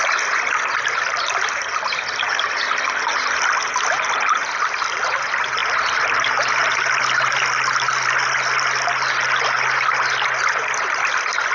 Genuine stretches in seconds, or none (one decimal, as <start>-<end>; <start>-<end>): 0.0-11.5

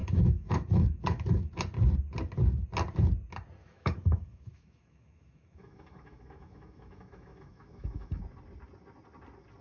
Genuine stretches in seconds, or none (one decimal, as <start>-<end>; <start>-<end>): 1.5-3.6; 8.2-9.6

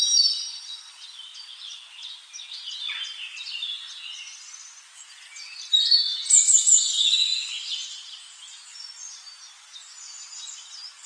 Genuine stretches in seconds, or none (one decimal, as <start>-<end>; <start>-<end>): 0.0-11.1

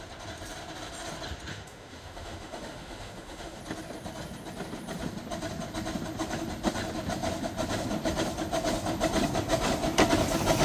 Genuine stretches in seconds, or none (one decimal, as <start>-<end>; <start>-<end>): 0.0-1.5; 3.6-10.6

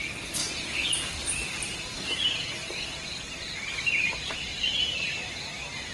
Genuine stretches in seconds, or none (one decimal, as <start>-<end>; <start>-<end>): 0.0-5.9

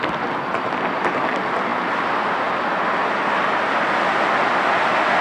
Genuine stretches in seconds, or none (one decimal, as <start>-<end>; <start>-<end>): 0.0-5.2

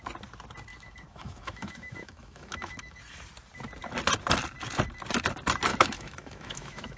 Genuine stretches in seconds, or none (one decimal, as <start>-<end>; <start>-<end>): 0.0-0.7; 3.0-5.7

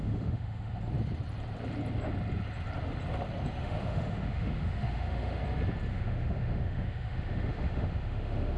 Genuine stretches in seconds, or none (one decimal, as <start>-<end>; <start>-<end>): 0.8-3.6; 5.4-5.9